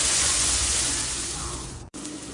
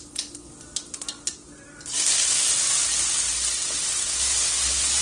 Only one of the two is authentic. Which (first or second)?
second